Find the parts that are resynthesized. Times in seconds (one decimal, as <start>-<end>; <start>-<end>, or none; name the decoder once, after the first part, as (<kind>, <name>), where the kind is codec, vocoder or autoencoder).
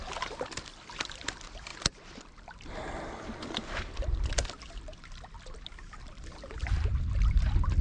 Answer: none